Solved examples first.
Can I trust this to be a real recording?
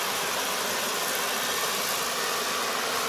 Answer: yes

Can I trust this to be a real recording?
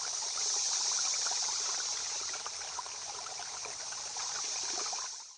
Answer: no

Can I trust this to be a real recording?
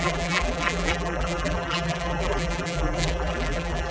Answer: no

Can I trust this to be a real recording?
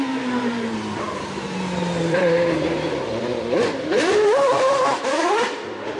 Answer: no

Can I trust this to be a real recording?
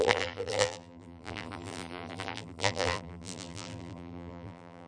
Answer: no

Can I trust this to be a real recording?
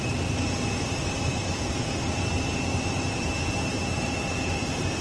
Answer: no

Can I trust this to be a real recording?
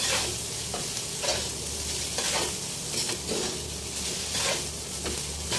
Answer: yes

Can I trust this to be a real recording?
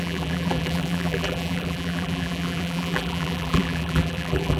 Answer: no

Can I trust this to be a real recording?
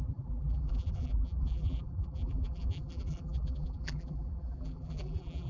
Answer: no